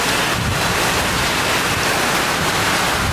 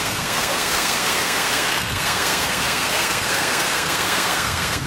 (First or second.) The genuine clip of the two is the first